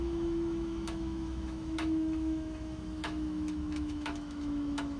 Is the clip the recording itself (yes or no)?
no